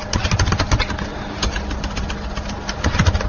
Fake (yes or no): no